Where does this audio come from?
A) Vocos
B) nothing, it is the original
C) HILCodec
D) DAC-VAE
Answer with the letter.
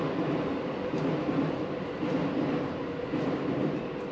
B